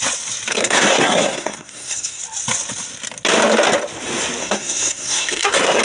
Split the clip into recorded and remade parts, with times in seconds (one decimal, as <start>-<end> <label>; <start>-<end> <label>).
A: 0.0-0.5 recorded; 0.5-2.2 remade; 2.2-4.4 recorded; 4.4-5.8 remade